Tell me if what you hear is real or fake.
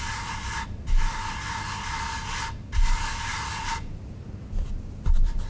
real